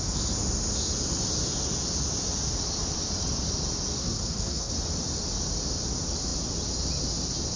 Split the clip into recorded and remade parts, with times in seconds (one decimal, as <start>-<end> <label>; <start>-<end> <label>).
0.0-4.0 recorded; 4.0-4.7 remade; 4.7-7.6 recorded